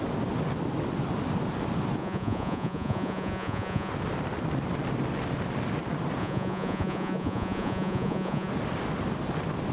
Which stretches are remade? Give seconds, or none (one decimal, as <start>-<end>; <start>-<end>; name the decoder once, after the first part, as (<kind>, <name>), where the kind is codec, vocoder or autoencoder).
2.0-3.9 (vocoder, Vocos); 6.2-8.5